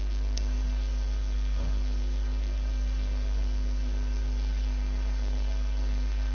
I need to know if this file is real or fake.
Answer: fake